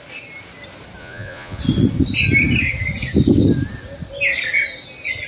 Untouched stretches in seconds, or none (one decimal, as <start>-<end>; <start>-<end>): 0.0-1.0; 1.6-5.3